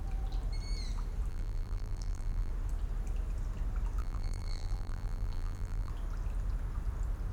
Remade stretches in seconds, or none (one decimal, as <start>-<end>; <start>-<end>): 1.3-2.5; 4.0-5.9

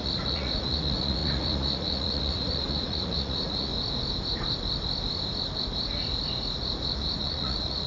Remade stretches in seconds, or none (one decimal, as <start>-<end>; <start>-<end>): 0.0-3.7; 7.2-7.9

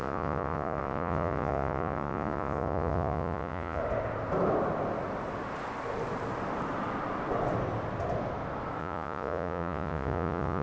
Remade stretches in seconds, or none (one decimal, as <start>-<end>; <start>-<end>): 0.0-3.8; 8.8-10.6